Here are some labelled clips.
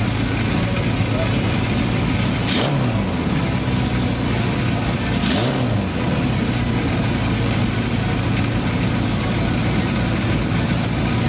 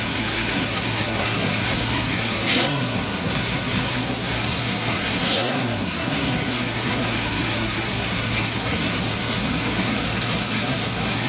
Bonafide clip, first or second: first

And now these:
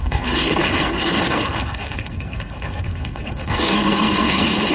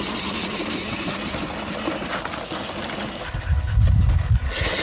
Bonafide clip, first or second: second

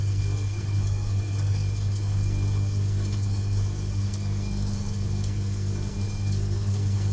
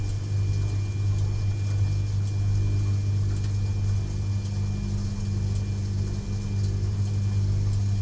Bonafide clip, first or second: second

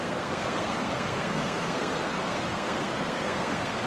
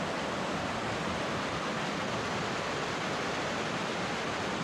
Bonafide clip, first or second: second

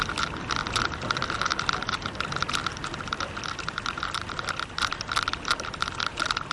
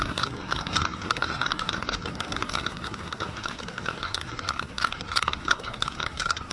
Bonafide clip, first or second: first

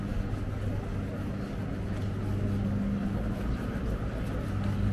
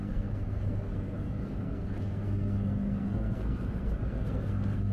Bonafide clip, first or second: first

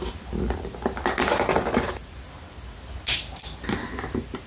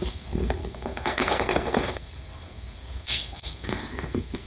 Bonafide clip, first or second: first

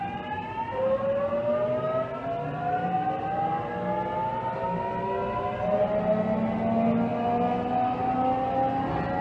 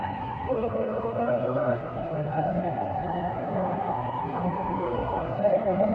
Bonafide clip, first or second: first